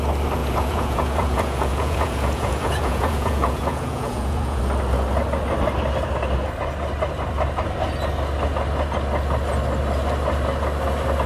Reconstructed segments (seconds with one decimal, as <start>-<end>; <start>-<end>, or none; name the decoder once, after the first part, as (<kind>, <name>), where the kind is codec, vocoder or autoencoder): 0.4-4.6 (vocoder, Vocos)